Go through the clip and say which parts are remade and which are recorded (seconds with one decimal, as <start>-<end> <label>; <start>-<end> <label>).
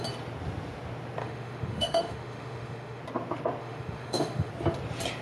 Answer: 0.0-1.2 recorded; 1.2-3.0 remade; 3.0-3.6 recorded; 3.6-4.5 remade; 4.5-5.2 recorded